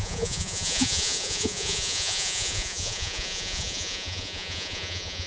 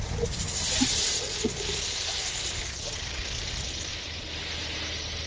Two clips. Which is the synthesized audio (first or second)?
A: first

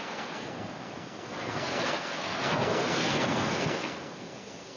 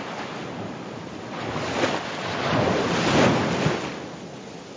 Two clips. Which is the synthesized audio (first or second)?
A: first